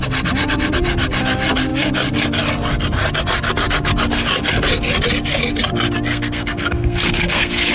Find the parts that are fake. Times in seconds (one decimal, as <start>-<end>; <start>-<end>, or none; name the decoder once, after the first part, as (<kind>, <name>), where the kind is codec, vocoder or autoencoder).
6.1-7.7 (codec, SNAC)